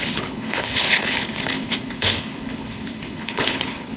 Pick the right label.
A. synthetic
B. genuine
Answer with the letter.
A